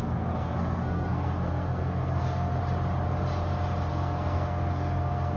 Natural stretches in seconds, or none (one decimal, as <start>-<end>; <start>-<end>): 2.6-3.9